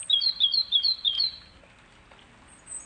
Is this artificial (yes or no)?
no